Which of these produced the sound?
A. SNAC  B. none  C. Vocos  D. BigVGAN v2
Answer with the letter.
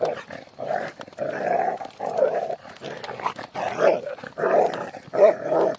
B